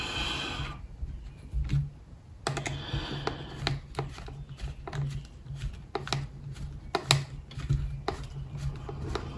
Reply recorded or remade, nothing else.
recorded